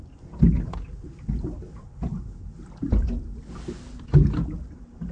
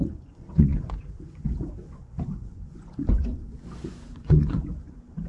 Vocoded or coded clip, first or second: second